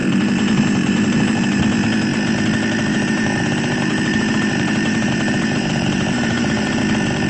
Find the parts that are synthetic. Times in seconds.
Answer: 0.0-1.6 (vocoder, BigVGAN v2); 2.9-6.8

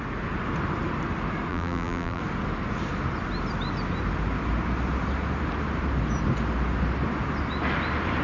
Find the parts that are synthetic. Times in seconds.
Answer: 1.5-2.2 (vocoder, BigVGAN v2)

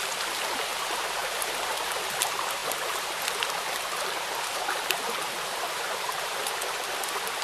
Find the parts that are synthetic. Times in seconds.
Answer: 2.6-3.2 (vocoder, BigVGAN v2); 4.5-6.4

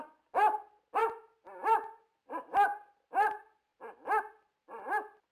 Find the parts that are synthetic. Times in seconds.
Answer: 1.0-2.3 (vocoder, BigVGAN v2)

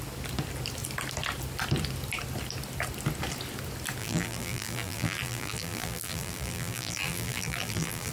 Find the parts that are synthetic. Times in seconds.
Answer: 4.0-8.1 (vocoder, BigVGAN v2)

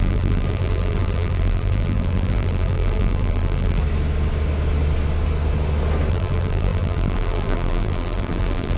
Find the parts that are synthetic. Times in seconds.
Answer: 0.0-3.8 (vocoder, BigVGAN v2); 6.1-8.8

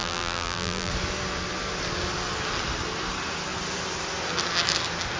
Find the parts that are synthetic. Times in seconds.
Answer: 0.0-0.9 (vocoder, BigVGAN v2)